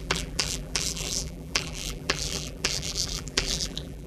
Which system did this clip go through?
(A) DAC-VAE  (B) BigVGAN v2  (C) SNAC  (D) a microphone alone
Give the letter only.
B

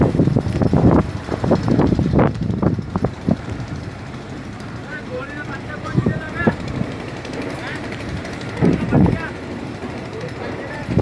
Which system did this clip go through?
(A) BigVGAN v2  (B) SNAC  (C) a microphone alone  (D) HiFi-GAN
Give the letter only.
A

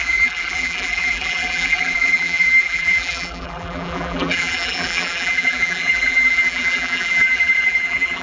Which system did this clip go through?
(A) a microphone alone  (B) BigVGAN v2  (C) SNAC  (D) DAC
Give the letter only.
B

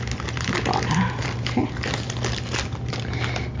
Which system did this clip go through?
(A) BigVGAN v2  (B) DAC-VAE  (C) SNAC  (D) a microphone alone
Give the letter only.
D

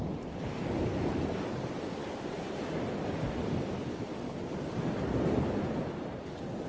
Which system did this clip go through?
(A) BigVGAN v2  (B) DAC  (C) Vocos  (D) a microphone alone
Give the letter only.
D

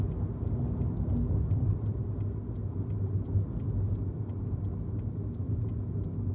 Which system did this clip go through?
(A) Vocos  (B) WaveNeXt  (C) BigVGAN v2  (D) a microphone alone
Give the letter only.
D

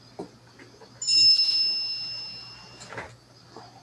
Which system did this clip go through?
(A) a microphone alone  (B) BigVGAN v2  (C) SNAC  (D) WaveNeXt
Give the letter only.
A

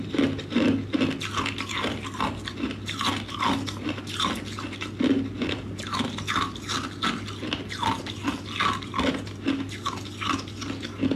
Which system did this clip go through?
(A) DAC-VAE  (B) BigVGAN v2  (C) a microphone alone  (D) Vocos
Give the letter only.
C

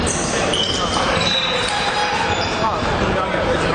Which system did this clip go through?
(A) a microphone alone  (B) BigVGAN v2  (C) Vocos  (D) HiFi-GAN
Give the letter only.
B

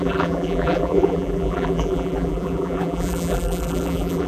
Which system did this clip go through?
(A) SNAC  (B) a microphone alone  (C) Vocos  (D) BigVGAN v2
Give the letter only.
D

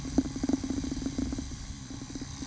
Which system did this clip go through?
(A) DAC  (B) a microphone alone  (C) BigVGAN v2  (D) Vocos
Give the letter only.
B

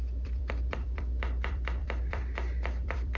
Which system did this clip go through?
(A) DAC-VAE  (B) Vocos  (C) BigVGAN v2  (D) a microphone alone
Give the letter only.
C